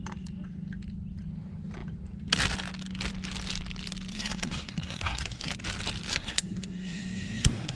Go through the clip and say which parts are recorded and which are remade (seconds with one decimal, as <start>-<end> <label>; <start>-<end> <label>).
0.0-4.1 recorded; 4.1-5.5 remade; 5.5-6.1 recorded; 6.1-7.8 remade